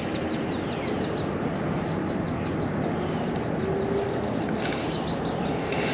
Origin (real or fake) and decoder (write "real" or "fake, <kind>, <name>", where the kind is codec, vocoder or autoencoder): real